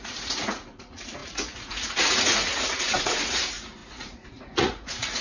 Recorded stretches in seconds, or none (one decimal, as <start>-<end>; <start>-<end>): none